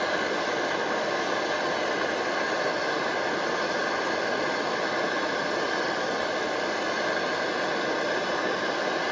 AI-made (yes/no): no